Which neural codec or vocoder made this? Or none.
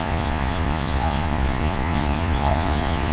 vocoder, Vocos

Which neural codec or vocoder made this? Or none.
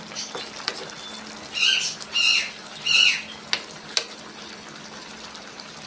none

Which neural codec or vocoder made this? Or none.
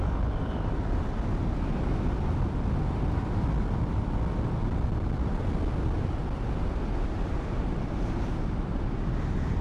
none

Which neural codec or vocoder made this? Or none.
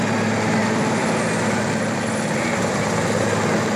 none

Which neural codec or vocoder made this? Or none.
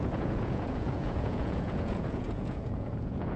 vocoder, Vocos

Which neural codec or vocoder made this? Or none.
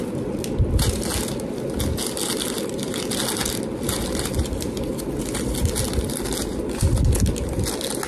none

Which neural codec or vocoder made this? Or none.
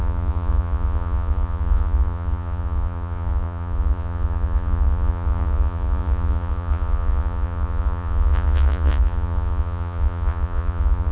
vocoder, Vocos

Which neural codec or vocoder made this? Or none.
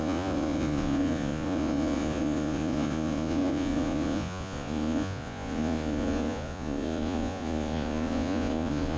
vocoder, Vocos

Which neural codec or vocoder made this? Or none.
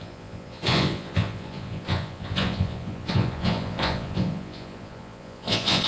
vocoder, Vocos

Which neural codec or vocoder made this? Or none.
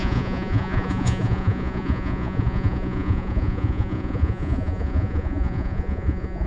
vocoder, Vocos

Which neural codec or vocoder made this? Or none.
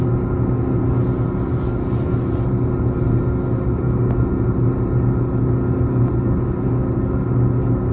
none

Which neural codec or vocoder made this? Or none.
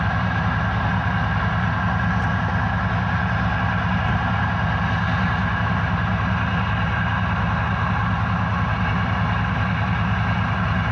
none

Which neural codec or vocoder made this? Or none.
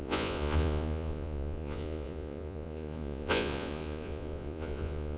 vocoder, Vocos